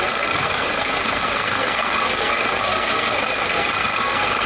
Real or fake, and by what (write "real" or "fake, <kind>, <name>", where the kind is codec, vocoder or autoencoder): fake, codec, SNAC